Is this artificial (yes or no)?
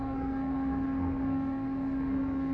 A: yes